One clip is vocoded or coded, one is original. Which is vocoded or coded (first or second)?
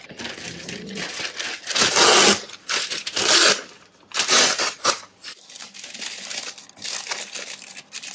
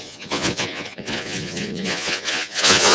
second